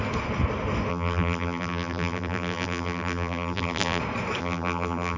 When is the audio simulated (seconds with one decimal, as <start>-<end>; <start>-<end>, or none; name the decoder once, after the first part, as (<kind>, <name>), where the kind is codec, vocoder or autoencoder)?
0.9-4.0 (vocoder, BigVGAN v2); 4.4-5.2